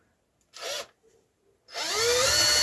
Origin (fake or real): real